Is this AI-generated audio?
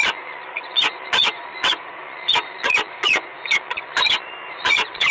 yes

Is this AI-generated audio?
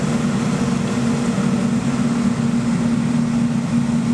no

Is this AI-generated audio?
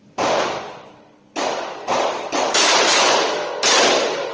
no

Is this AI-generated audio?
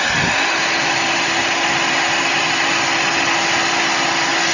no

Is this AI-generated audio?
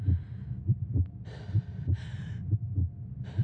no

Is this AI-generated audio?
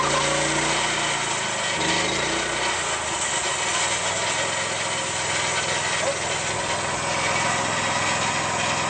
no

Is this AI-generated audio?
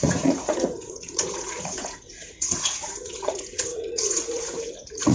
yes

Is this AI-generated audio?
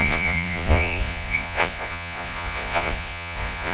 yes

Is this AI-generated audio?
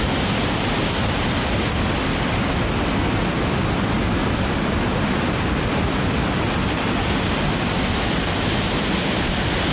no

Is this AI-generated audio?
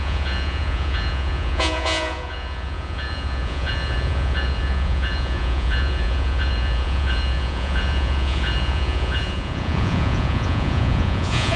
yes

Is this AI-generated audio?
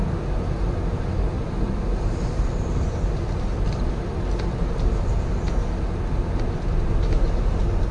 no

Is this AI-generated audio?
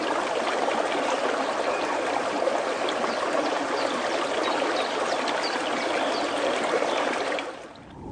no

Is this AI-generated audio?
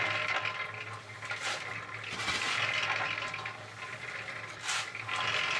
no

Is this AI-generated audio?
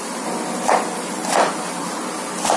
no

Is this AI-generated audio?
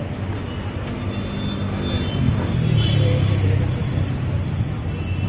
no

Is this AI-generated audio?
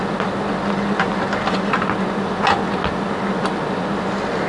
no